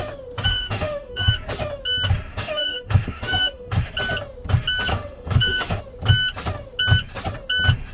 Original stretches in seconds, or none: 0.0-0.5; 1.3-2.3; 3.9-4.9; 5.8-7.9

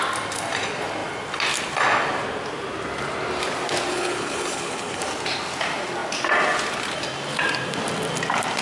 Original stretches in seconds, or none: 0.0-3.9; 5.0-8.6

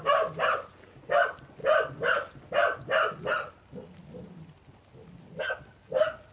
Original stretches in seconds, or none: 0.0-6.3

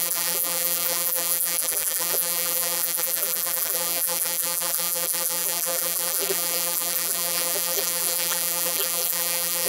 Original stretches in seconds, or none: none

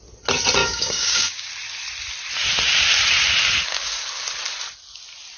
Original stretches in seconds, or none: 0.0-0.6; 1.5-5.4

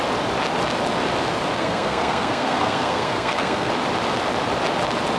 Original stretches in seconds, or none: 0.0-1.6; 3.7-5.2

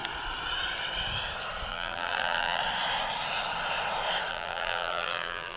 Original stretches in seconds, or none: 0.0-1.7; 2.6-4.3

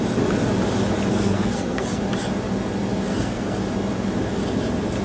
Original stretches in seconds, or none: 0.0-1.1; 2.0-3.1; 3.6-5.0